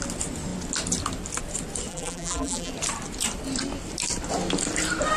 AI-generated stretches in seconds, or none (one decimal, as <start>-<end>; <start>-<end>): 1.9-2.7